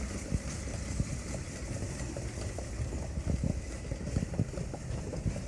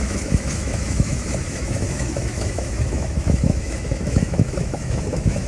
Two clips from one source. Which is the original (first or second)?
first